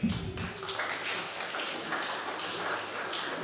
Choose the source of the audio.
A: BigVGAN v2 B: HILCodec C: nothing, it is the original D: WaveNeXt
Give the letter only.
C